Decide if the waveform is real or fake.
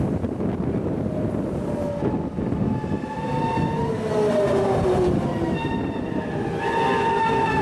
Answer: real